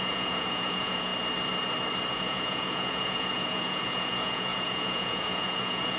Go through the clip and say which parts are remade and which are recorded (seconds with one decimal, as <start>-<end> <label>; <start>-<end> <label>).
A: 0.0-1.1 remade; 1.1-2.1 recorded; 2.1-6.0 remade